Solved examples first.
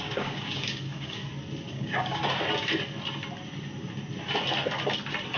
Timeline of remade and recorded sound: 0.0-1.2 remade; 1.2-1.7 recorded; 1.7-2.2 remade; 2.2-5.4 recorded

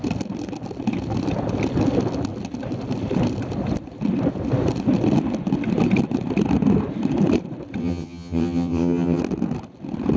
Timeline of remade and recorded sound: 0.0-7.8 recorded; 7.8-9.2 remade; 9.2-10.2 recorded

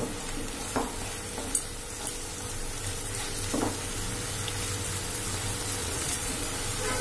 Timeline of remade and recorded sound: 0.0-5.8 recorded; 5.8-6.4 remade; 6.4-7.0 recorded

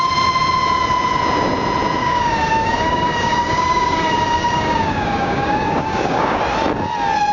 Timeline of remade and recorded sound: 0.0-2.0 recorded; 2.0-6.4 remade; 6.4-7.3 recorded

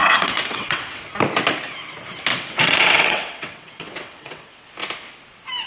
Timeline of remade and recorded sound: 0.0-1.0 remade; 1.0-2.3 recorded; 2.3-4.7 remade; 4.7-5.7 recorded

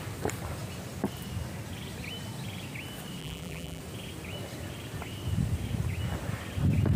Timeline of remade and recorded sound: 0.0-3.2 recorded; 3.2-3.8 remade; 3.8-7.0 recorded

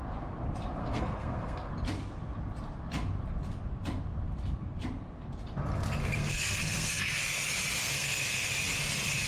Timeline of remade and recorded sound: 0.0-0.8 recorded; 0.8-1.7 remade; 1.7-6.0 recorded; 6.0-7.0 remade; 7.0-7.8 recorded; 7.8-8.5 remade; 8.5-9.3 recorded

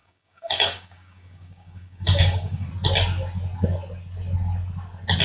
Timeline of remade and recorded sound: 0.0-2.7 remade; 2.7-5.2 recorded